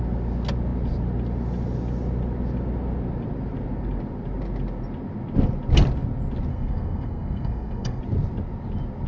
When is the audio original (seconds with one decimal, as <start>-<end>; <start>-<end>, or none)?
0.0-6.5; 8.0-9.1